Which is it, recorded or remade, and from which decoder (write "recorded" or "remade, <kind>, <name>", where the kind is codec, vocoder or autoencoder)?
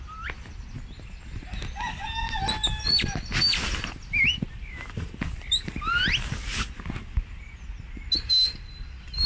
recorded